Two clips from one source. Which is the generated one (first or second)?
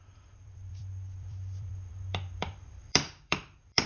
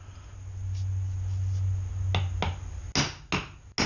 first